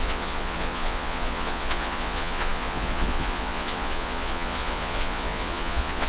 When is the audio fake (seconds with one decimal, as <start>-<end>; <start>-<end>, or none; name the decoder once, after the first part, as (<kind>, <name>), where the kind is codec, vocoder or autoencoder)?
0.0-6.1 (vocoder, Vocos)